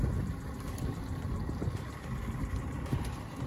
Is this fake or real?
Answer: real